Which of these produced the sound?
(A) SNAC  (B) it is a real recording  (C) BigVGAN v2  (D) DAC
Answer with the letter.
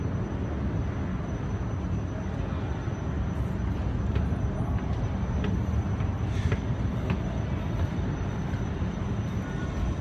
B